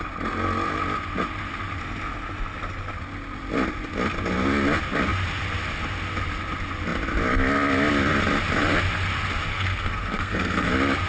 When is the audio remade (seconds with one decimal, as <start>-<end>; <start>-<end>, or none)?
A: 9.5-10.7